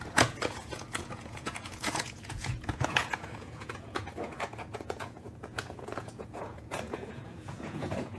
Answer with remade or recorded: remade